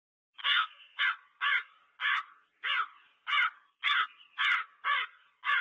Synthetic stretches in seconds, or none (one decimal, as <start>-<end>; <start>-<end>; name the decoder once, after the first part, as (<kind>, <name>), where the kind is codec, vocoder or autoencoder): 0.4-1.0 (codec, SNAC)